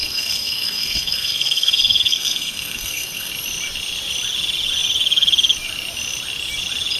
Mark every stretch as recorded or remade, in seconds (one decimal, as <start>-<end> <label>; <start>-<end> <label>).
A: 0.0-3.3 remade; 3.3-7.0 recorded